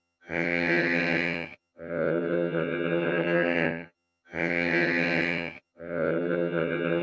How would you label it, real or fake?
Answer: fake